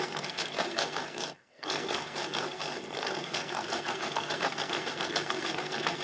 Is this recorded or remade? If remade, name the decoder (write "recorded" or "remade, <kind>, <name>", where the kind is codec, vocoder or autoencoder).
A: remade, codec, SNAC